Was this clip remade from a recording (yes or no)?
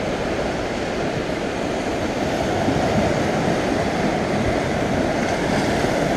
yes